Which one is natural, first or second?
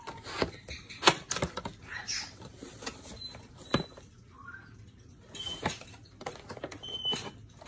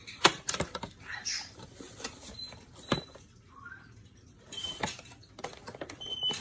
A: first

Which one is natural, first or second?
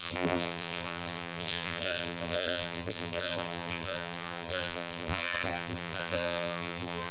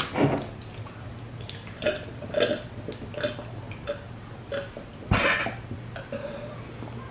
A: second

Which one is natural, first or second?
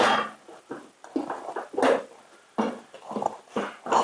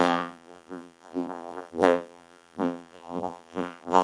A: first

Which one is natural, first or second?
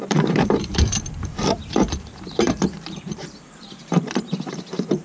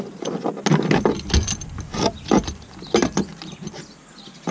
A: second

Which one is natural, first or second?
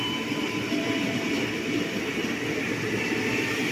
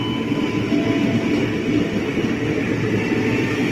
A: second